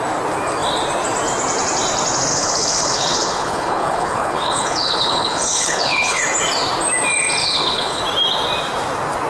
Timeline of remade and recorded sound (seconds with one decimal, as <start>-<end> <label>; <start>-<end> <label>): 0.0-2.3 recorded; 2.3-6.2 remade; 6.2-7.4 recorded; 7.4-8.0 remade; 8.0-9.3 recorded